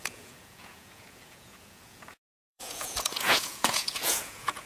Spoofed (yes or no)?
yes